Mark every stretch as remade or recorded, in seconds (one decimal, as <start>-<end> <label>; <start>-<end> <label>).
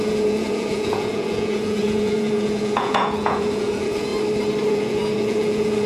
0.0-4.1 remade; 4.1-4.7 recorded; 4.7-5.9 remade